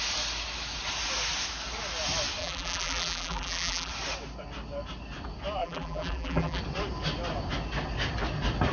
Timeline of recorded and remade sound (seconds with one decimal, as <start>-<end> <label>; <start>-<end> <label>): 0.0-2.4 recorded; 2.4-3.9 remade; 3.9-5.6 recorded; 5.6-6.6 remade; 6.6-8.7 recorded